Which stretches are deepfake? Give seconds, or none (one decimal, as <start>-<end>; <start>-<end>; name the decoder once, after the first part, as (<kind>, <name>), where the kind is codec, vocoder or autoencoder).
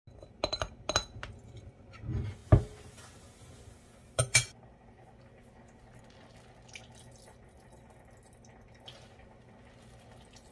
none